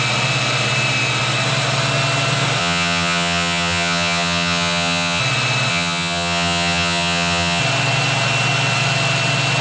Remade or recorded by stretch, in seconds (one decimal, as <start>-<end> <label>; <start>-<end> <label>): 0.0-2.6 recorded; 2.6-5.2 remade; 5.2-5.7 recorded; 5.7-7.6 remade; 7.6-9.6 recorded

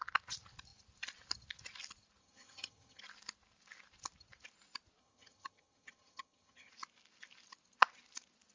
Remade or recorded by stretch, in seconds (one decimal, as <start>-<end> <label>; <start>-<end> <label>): 0.0-2.2 recorded; 2.2-3.0 remade; 3.0-5.0 recorded; 5.0-6.7 remade; 6.7-8.5 recorded

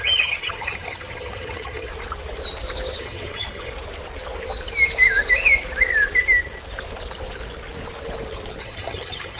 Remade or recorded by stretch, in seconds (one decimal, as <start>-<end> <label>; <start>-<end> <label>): 0.0-1.9 remade; 1.9-3.0 recorded; 3.0-3.7 remade; 3.7-8.6 recorded; 8.6-9.4 remade

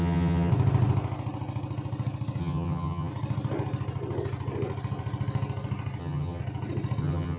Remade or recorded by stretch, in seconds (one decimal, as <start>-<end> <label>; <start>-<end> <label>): 0.0-0.5 remade; 0.5-2.4 recorded; 2.4-3.1 remade; 3.1-6.0 recorded; 6.0-6.4 remade; 6.4-7.0 recorded; 7.0-7.4 remade

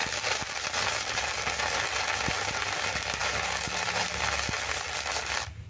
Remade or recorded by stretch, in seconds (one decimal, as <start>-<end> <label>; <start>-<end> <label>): 0.0-5.7 recorded

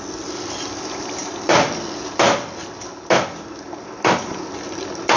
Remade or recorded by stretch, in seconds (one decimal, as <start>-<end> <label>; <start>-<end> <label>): 0.0-5.2 recorded

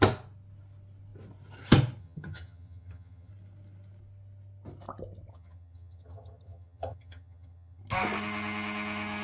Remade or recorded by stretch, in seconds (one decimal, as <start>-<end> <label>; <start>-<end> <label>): 0.0-2.0 recorded; 2.0-3.3 remade; 3.3-5.3 recorded; 5.3-7.8 remade; 7.8-9.2 recorded

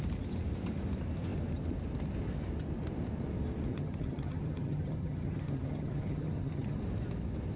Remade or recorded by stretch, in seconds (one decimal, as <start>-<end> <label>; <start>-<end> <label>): 0.0-3.7 recorded; 3.7-6.8 remade; 6.8-7.6 recorded